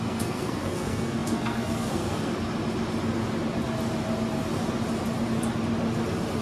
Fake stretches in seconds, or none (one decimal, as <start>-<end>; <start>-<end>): 0.0-2.3

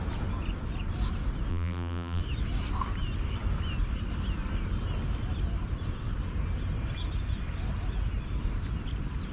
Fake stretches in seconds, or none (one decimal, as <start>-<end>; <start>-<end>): 1.5-2.2

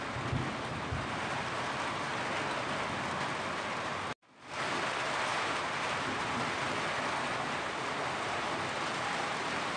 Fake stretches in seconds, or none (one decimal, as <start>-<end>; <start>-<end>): 5.3-6.4

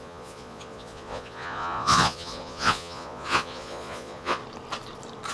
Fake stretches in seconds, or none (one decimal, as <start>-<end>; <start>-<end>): 0.0-4.4

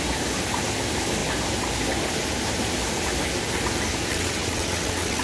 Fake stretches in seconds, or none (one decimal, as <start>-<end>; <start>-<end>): 4.1-5.2

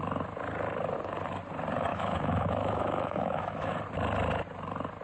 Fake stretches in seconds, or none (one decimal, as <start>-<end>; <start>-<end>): 1.9-3.8

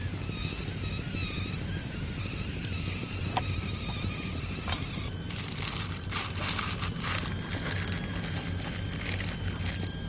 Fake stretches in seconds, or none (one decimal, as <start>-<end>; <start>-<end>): 1.8-5.2

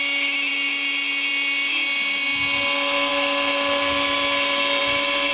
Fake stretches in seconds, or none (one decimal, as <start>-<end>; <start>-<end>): none